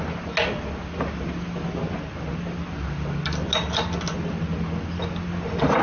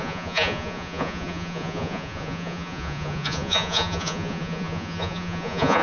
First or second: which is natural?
first